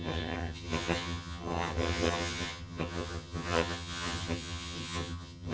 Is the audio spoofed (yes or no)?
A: yes